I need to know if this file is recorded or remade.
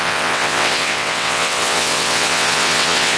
remade